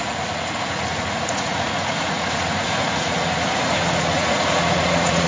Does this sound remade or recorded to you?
remade